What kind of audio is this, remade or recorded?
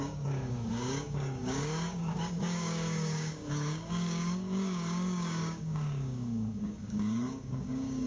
remade